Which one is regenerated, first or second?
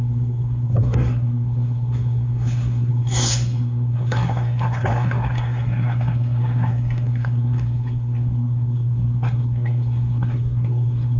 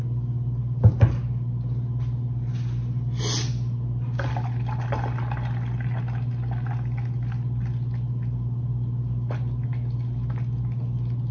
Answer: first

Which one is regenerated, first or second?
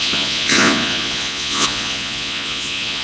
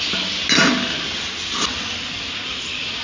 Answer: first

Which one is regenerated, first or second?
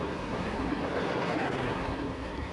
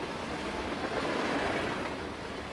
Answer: first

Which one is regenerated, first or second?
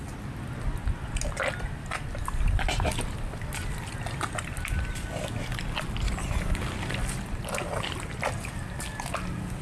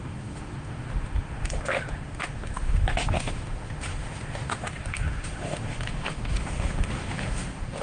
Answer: second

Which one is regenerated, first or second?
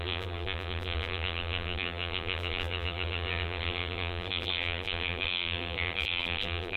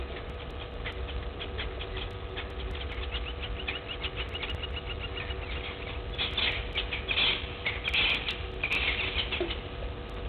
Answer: first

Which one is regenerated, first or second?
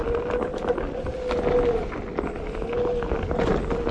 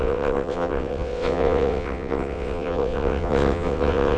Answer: second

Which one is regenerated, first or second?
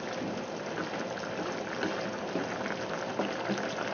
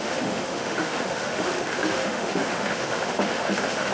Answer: second